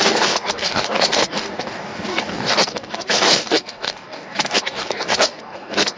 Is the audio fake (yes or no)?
yes